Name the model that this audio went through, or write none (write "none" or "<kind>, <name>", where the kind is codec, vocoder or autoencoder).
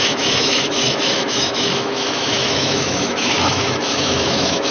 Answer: autoencoder, DAC-VAE